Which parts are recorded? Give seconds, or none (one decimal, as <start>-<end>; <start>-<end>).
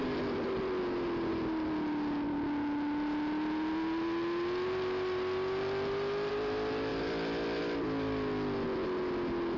0.8-9.6